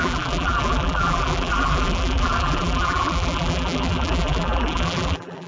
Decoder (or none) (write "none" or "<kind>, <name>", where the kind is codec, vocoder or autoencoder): vocoder, BigVGAN v2